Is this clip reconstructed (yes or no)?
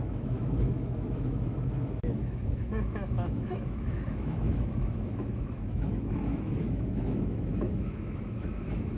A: yes